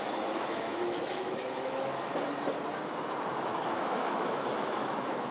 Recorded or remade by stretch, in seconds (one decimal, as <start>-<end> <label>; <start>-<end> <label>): 0.0-2.1 remade; 2.1-3.3 recorded; 3.3-5.3 remade